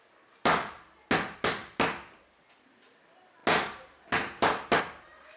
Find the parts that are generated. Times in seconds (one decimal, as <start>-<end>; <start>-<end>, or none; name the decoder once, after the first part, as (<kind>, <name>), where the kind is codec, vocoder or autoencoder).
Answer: none